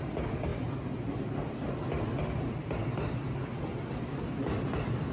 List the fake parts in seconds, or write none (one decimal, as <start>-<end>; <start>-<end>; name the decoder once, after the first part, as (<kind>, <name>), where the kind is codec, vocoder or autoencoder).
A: none